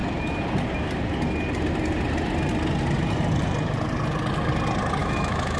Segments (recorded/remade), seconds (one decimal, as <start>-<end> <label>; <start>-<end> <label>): 0.0-5.0 recorded; 5.0-5.6 remade